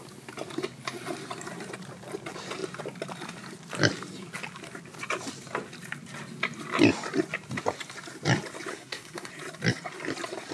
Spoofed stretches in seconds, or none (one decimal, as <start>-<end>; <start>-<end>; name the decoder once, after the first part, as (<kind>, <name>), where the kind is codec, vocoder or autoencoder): 8.7-9.3 (codec, SNAC)